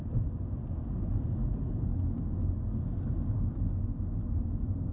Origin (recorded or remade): recorded